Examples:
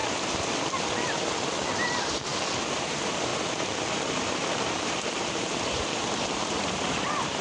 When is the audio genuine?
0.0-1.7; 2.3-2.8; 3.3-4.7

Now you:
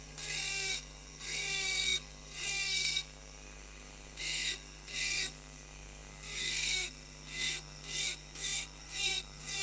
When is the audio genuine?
none